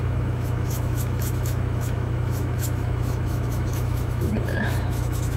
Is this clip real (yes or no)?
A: no